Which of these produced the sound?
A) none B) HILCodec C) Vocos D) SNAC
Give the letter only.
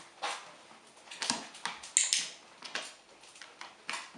A